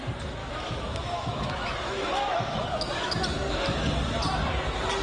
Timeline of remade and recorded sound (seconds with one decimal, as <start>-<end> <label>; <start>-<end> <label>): 0.0-0.4 recorded; 0.4-3.2 remade; 3.2-5.0 recorded